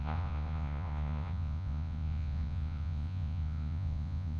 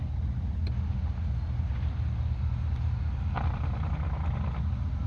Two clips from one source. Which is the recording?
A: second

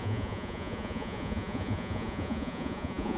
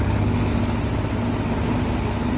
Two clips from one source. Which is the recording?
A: second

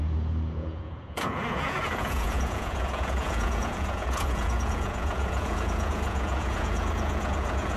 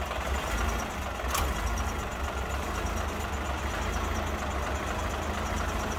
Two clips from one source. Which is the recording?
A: second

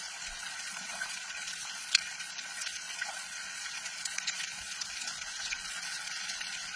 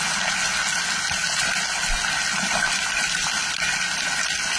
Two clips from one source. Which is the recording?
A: second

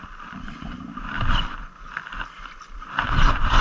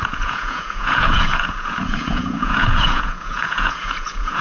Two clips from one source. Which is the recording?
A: first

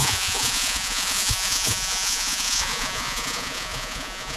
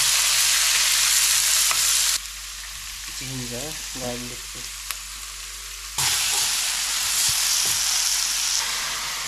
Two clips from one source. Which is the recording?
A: second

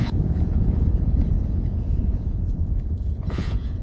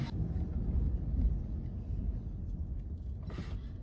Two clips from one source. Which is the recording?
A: second